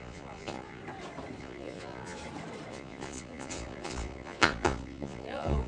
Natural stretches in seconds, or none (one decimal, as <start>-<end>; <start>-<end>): 0.8-1.4; 2.2-2.7